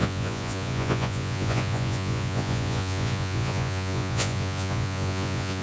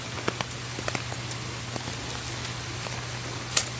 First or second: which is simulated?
first